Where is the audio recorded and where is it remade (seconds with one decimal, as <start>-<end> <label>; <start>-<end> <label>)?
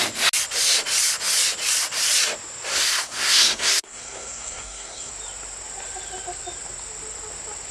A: 0.0-2.7 recorded; 2.7-5.1 remade; 5.1-7.7 recorded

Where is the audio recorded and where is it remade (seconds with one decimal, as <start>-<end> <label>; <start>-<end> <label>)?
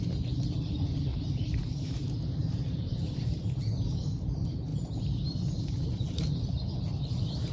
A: 0.0-1.1 recorded; 1.1-3.6 remade; 3.6-7.5 recorded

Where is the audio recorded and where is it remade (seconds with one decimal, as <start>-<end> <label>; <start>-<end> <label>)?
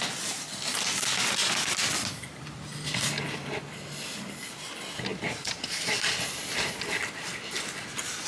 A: 0.0-8.3 recorded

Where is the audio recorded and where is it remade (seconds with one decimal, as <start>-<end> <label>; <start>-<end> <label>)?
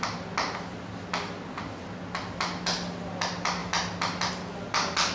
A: 0.0-5.1 recorded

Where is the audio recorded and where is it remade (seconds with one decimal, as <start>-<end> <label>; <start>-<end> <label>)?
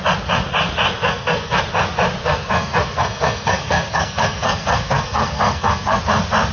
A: 0.0-1.0 recorded; 1.0-1.6 remade; 1.6-2.2 recorded; 2.2-6.0 remade; 6.0-6.5 recorded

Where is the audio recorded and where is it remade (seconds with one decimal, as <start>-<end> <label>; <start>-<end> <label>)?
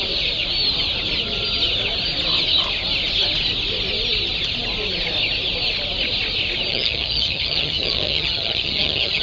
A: 0.0-6.7 recorded; 6.7-9.2 remade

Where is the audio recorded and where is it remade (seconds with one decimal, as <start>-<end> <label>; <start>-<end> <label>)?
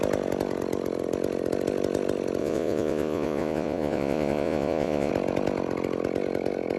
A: 0.0-2.4 recorded; 2.4-5.1 remade; 5.1-6.8 recorded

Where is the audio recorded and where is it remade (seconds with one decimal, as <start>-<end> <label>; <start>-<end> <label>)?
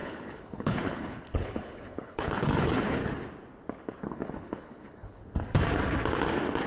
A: 0.0-3.0 remade; 3.0-4.0 recorded; 4.0-5.2 remade; 5.2-6.7 recorded